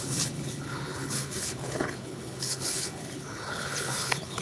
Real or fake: fake